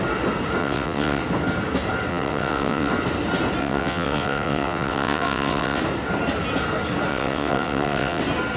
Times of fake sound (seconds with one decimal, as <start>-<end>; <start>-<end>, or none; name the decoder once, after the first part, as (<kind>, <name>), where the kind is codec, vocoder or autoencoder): 0.6-1.2 (vocoder, WaveNeXt); 2.1-2.9; 3.6-5.8; 7.1-8.2